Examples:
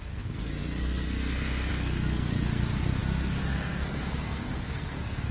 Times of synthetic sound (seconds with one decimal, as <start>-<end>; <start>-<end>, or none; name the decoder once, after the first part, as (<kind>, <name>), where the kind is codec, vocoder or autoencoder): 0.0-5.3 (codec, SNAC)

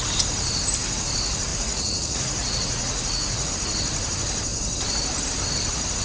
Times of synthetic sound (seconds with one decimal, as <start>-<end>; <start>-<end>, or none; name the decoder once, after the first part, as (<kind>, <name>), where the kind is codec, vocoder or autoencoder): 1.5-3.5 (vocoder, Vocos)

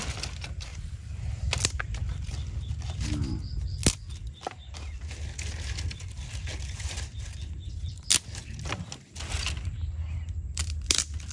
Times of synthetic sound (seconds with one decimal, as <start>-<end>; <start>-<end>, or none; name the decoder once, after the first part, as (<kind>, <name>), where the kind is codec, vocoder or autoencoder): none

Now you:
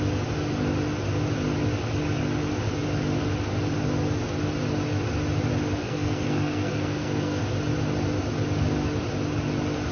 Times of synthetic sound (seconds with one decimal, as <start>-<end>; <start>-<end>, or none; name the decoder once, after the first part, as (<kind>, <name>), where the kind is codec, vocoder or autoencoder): 5.8-7.4 (codec, SNAC)